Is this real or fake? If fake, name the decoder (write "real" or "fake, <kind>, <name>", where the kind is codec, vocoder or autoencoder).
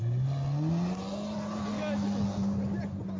real